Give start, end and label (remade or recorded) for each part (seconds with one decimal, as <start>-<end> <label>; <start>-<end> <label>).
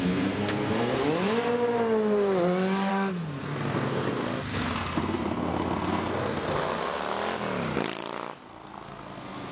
0.0-1.0 remade; 1.0-2.9 recorded; 2.9-7.0 remade; 7.0-8.4 recorded; 8.4-9.5 remade